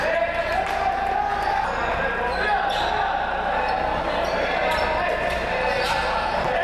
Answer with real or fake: real